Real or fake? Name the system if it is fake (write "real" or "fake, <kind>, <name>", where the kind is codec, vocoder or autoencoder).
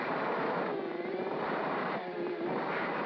fake, vocoder, BigVGAN v2